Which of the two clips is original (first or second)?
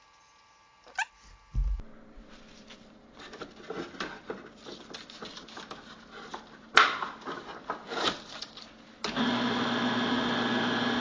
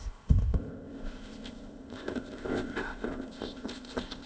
first